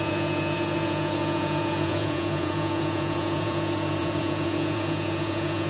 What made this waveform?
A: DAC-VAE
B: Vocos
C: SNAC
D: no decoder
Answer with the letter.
B